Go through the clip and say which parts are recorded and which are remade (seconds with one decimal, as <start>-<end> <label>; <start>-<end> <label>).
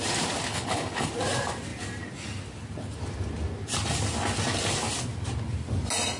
0.0-0.5 recorded; 0.5-1.1 remade; 1.1-6.2 recorded